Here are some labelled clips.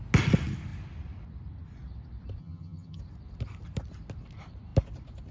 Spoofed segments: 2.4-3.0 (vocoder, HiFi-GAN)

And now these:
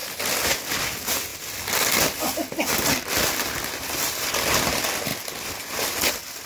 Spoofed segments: 1.3-4.3 (vocoder, BigVGAN v2)